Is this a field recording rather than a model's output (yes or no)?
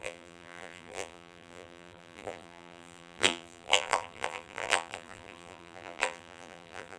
no